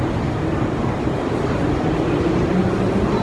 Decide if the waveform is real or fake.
real